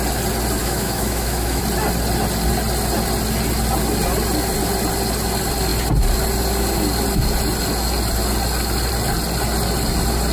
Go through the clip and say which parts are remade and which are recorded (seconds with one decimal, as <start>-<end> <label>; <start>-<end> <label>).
0.0-0.6 recorded; 0.6-1.6 remade; 1.6-10.3 recorded